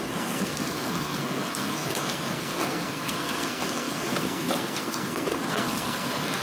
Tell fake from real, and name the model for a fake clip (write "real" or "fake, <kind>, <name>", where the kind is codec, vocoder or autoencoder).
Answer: fake, codec, SNAC